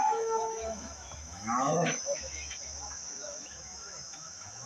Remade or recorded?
remade